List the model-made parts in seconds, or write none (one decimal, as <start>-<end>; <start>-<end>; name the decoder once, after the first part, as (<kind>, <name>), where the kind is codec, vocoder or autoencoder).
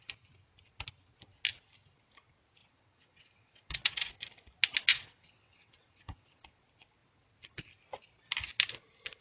2.6-4.1 (vocoder, WaveNeXt); 4.9-6.6